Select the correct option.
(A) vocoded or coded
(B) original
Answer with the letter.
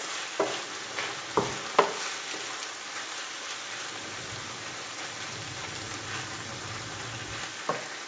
B